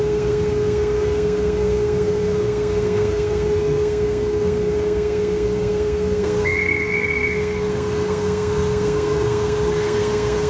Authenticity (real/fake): fake